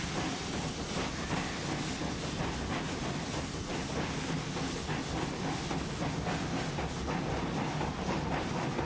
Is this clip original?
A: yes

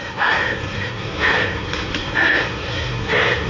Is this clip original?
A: no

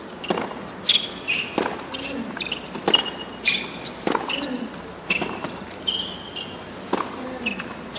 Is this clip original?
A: yes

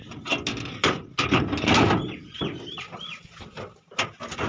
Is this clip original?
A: yes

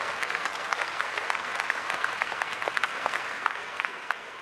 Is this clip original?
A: no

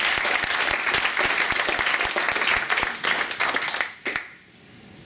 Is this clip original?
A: yes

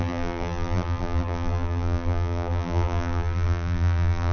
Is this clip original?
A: no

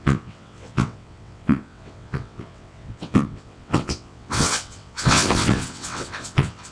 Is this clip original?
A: no